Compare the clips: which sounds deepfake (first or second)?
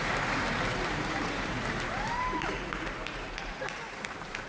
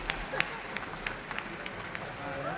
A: first